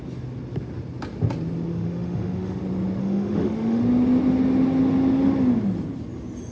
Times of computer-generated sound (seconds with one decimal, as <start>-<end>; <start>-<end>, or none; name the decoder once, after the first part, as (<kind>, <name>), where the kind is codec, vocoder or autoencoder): 1.7-2.6 (autoencoder, DAC-VAE); 3.0-3.8

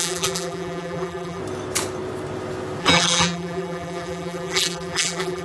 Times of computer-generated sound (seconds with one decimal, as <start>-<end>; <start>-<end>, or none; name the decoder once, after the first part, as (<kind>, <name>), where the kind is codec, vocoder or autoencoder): 0.0-1.4 (vocoder, BigVGAN v2); 2.8-5.4

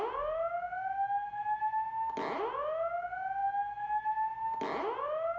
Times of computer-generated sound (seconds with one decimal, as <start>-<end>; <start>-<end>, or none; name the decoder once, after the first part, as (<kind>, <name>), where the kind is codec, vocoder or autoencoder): none

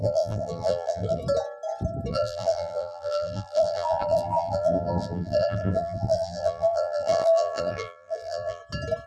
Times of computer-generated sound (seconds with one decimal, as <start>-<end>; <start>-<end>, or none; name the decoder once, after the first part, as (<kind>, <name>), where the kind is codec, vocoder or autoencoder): 0.0-1.2 (vocoder, BigVGAN v2); 2.1-8.6